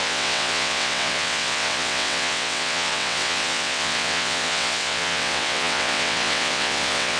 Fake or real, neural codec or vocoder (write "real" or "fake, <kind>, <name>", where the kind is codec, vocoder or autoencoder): fake, vocoder, WaveNeXt